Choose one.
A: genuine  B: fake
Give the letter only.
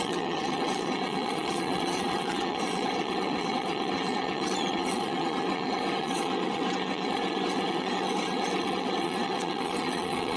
B